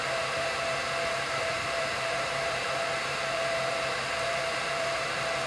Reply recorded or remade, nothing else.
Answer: remade